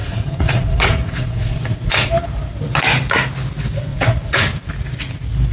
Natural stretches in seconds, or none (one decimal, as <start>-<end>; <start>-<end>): 2.1-3.9; 4.7-5.5